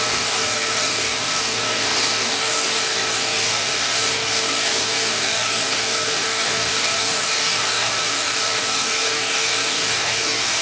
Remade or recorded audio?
remade